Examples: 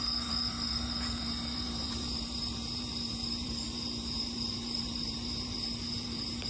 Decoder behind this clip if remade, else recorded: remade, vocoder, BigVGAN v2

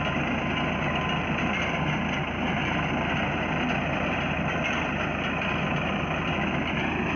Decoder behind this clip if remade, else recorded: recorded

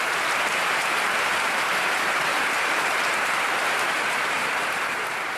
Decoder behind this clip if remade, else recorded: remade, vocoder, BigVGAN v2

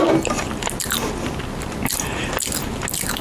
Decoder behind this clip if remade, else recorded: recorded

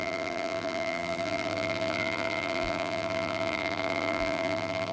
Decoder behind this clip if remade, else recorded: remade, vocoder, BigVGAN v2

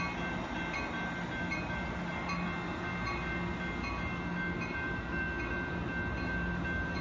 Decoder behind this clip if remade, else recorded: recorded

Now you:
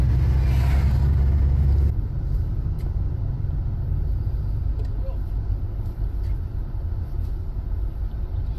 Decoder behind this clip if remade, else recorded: recorded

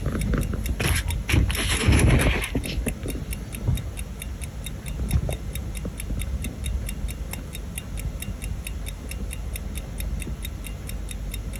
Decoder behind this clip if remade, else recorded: recorded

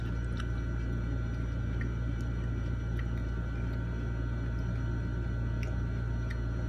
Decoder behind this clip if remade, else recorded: recorded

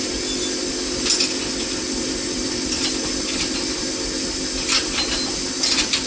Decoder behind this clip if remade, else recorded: recorded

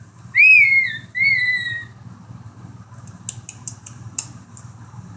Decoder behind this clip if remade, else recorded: recorded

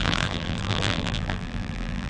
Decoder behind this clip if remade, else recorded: remade, vocoder, BigVGAN v2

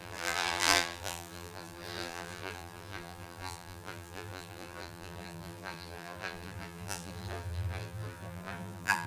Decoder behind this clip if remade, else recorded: remade, vocoder, BigVGAN v2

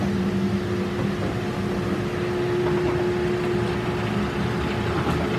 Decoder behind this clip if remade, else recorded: recorded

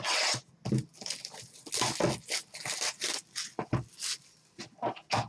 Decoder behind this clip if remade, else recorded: recorded